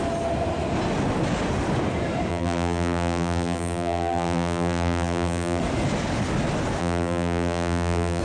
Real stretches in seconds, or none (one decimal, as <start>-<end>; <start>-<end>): 0.0-2.3; 5.6-6.8